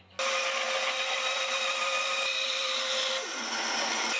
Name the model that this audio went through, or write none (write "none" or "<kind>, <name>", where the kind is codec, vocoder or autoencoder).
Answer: none